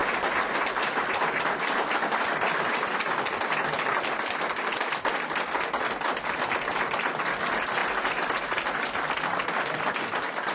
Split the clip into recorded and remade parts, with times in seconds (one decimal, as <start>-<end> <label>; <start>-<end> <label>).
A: 0.0-10.5 recorded